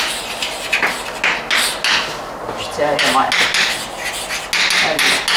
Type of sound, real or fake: real